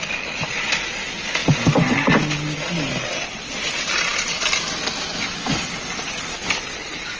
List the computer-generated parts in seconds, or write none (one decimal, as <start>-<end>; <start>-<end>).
none